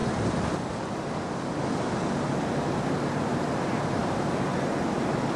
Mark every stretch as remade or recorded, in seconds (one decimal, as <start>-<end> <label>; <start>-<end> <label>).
0.0-5.4 recorded